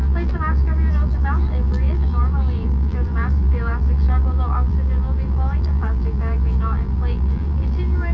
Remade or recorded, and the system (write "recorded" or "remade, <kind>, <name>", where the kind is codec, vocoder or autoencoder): remade, vocoder, BigVGAN v2